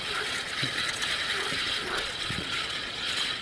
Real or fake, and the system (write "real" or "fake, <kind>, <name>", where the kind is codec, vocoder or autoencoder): fake, vocoder, Vocos